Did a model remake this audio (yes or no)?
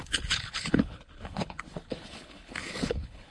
yes